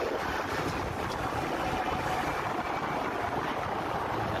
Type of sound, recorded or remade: recorded